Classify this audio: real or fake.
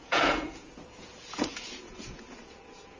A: fake